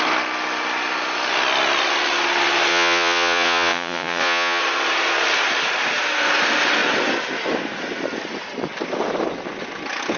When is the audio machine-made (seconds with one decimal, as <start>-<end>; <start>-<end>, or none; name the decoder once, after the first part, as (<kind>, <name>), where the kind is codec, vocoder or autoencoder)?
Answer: 2.7-4.6 (vocoder, Vocos)